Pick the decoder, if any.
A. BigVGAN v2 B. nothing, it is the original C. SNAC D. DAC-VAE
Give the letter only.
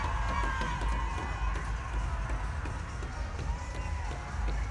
B